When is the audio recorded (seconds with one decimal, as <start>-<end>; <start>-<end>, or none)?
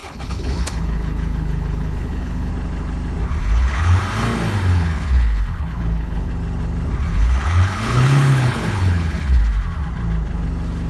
2.5-3.4; 4.0-4.7; 6.3-7.1; 9.4-10.9